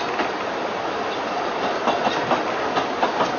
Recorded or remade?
recorded